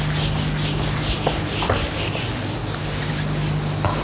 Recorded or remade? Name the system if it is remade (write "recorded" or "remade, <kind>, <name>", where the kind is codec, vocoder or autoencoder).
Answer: recorded